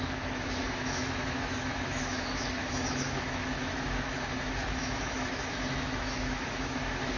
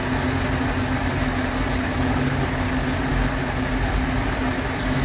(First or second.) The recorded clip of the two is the second